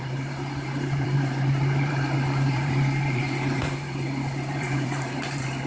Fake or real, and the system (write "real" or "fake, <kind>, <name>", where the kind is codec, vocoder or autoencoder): fake, vocoder, BigVGAN v2